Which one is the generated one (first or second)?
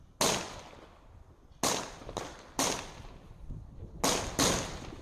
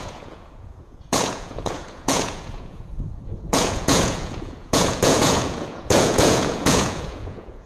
second